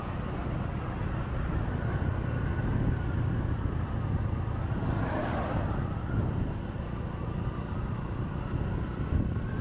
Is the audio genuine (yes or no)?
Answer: yes